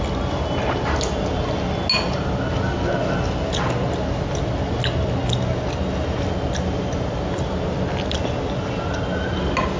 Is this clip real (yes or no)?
yes